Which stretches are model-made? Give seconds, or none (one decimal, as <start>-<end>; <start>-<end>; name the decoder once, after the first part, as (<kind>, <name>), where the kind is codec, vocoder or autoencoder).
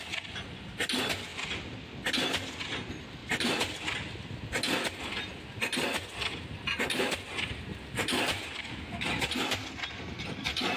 3.2-5.6 (vocoder, BigVGAN v2); 7.7-8.6